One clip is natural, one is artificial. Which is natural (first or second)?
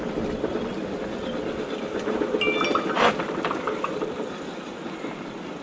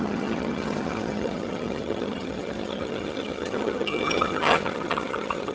first